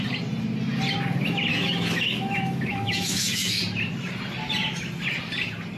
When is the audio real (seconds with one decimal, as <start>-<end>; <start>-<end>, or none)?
0.0-1.5; 3.6-5.8